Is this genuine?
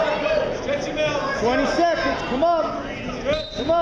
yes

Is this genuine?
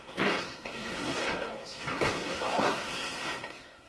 no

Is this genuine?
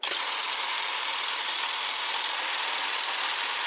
yes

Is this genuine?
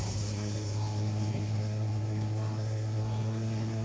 no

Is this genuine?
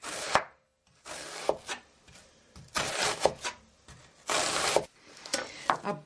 yes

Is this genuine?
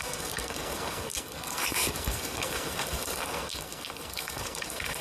no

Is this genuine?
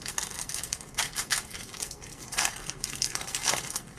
no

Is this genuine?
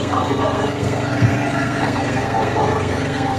no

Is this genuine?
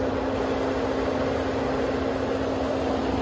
yes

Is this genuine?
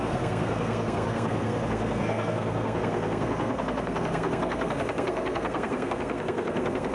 no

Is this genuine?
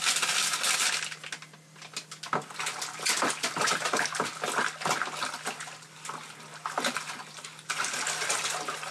yes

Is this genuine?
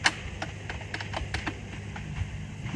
yes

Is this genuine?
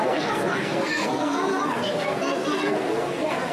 no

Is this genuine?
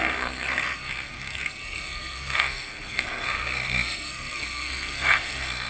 no